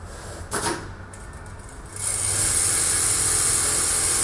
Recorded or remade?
recorded